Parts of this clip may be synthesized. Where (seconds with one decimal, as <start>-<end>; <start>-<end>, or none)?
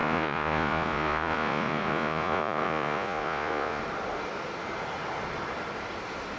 0.0-3.8